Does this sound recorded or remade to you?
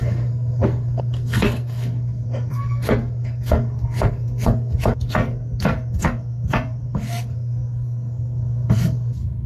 remade